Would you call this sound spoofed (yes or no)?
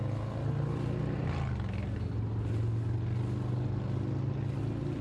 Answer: no